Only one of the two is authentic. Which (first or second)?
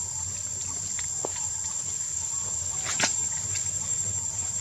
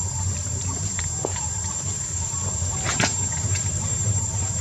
first